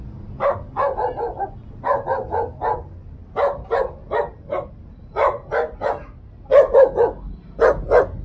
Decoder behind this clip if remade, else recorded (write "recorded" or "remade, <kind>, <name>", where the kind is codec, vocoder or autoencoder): recorded